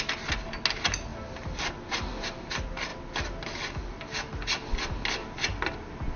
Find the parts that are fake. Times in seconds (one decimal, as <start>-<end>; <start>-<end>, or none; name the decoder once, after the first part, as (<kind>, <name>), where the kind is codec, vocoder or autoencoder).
none